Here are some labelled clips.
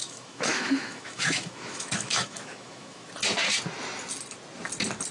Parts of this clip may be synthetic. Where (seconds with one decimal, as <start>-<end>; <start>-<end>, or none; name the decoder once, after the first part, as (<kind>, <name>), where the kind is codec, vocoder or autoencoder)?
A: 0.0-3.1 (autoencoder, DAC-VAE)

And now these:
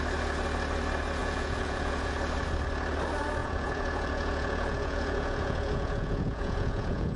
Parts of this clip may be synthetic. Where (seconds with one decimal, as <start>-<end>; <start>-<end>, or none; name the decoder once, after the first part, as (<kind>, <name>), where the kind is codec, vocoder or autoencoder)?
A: 1.2-2.1 (vocoder, Vocos); 3.4-7.2

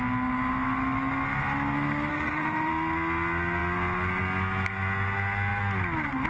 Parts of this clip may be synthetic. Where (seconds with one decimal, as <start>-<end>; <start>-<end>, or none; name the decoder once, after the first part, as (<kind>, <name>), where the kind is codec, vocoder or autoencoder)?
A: 2.1-2.7 (autoencoder, DAC-VAE)

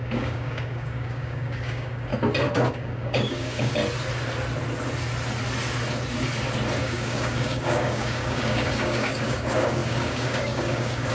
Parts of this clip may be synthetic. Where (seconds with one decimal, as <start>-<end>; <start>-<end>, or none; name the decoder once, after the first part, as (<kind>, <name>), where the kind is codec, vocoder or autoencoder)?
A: 0.0-2.1 (codec, DAC); 2.7-3.8; 6.8-11.1

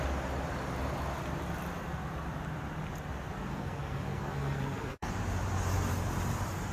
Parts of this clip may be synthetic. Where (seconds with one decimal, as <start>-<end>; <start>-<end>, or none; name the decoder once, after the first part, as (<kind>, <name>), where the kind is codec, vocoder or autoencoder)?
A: 3.5-5.1 (codec, SNAC)

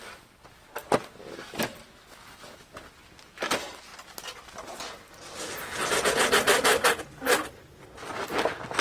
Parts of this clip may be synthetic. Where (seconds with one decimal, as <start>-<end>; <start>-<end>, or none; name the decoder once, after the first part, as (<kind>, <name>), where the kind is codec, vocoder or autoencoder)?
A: none